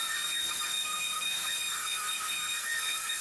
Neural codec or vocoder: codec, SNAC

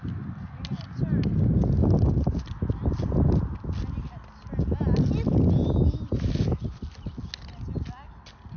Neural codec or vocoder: none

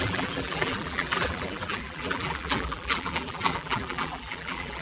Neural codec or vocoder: vocoder, BigVGAN v2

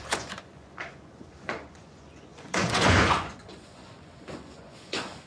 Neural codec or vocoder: vocoder, Vocos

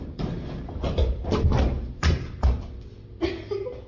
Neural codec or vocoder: none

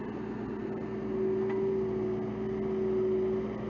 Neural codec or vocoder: none